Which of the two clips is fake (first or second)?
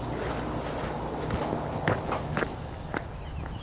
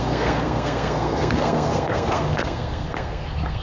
second